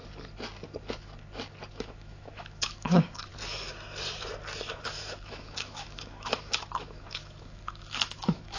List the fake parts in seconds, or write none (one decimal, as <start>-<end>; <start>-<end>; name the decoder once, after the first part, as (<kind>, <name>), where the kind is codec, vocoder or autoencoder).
1.7-3.3 (autoencoder, DAC-VAE); 4.7-8.6